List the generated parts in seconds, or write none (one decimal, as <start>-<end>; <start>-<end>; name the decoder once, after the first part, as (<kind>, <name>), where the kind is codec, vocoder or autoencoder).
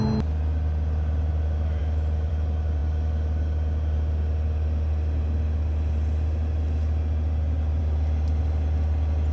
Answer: none